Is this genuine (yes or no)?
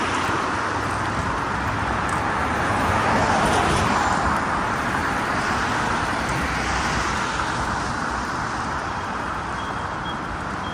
no